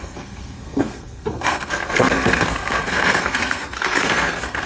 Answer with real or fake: fake